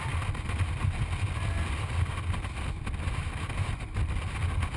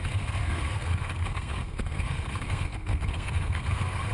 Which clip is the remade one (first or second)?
second